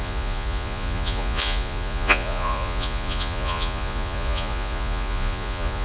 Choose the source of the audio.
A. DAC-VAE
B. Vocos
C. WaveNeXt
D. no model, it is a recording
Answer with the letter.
B